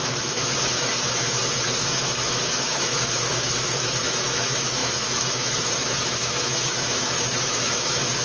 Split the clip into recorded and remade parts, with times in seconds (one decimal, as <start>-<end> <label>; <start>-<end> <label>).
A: 0.0-8.2 remade